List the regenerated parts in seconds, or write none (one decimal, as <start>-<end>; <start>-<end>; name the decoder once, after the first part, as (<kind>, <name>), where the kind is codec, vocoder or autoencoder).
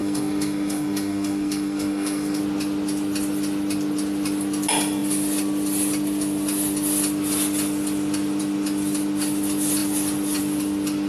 0.0-2.4 (codec, SNAC)